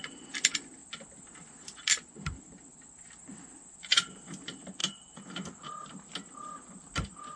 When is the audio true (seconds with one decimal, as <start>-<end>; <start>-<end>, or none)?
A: 0.0-0.8; 4.3-7.4